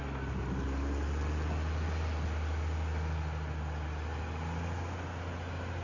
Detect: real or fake real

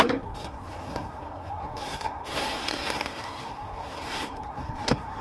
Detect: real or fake fake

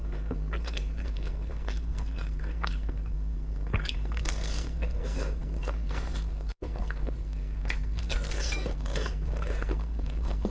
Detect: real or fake fake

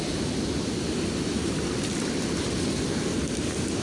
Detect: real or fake real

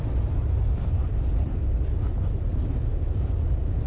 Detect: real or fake real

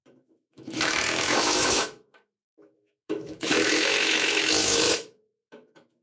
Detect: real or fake fake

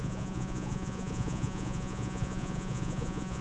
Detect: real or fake fake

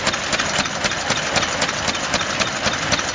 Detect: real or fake real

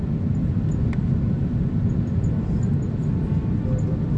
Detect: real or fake real